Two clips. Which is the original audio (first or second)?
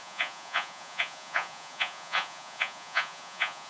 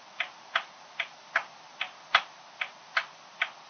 second